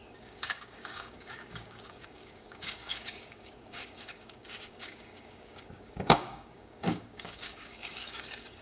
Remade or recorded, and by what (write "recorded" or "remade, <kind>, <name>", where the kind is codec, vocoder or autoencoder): remade, codec, DAC